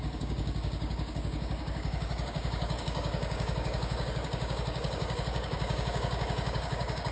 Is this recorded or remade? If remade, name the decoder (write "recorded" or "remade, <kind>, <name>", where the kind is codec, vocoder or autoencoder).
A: remade, codec, DAC